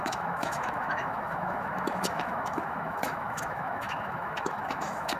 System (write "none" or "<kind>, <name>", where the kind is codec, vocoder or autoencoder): autoencoder, DAC-VAE